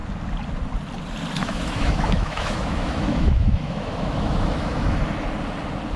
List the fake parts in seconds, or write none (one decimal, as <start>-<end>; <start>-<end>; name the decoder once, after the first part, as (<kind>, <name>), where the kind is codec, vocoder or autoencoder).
1.4-5.0 (autoencoder, DAC-VAE)